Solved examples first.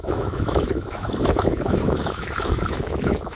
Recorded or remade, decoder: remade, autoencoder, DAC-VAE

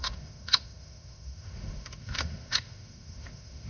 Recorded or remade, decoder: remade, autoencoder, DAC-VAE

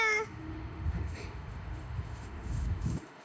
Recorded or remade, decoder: remade, autoencoder, DAC-VAE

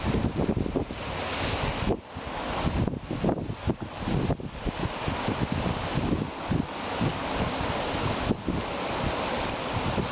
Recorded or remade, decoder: recorded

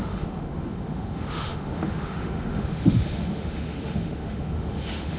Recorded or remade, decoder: remade, autoencoder, DAC-VAE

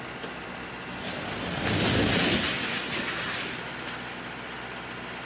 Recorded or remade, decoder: recorded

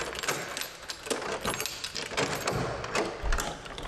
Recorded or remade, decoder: recorded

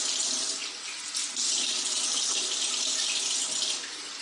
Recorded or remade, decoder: recorded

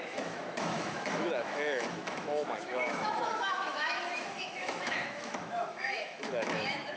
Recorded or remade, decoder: remade, autoencoder, DAC-VAE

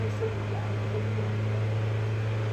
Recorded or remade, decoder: recorded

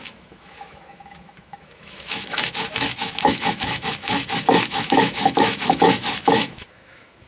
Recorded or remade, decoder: remade, autoencoder, DAC-VAE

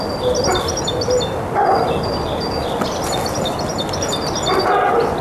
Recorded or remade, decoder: recorded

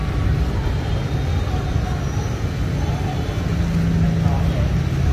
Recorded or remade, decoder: recorded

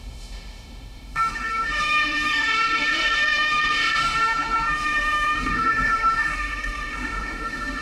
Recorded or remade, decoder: remade, autoencoder, DAC-VAE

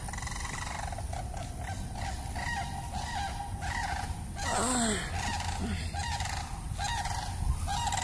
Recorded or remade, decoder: recorded